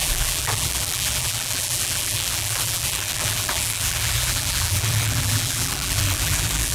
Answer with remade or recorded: remade